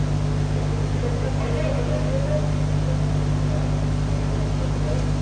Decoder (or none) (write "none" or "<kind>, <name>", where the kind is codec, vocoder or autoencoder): vocoder, BigVGAN v2